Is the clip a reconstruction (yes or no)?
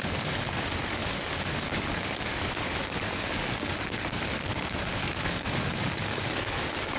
yes